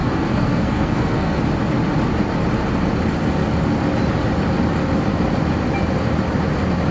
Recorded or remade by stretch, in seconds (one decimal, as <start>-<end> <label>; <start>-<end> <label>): 0.0-1.4 remade; 1.4-6.9 recorded